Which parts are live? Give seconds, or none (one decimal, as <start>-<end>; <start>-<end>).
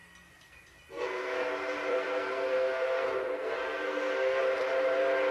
1.5-1.9; 4.4-5.3